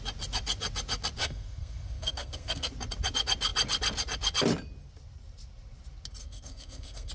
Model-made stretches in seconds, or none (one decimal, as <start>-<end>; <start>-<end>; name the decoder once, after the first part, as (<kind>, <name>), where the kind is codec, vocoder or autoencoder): 1.2-2.7 (codec, SNAC); 6.2-7.1